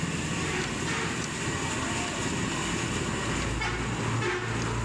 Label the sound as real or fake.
real